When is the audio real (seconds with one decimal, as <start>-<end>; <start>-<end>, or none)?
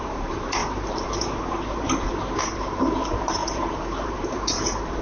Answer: none